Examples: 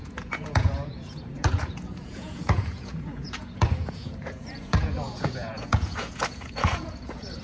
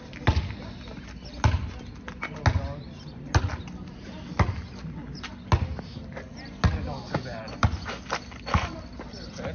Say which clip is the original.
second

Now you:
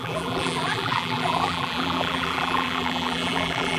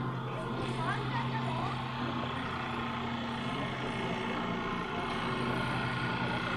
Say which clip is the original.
second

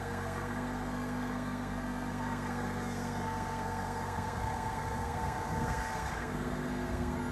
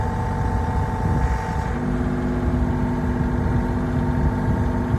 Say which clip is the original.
second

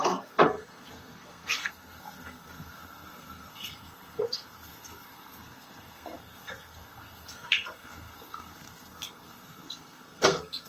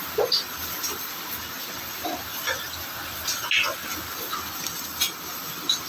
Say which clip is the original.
second